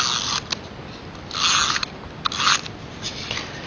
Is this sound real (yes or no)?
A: yes